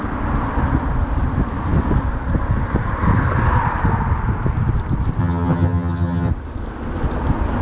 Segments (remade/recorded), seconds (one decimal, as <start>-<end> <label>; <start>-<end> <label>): 0.0-5.2 recorded; 5.2-6.3 remade; 6.3-7.6 recorded